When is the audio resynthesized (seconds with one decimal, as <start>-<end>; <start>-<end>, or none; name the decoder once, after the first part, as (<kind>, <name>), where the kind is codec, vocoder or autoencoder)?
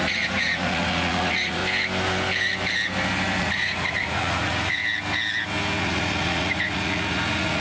0.0-1.6 (vocoder, Vocos); 3.4-4.8; 5.8-7.6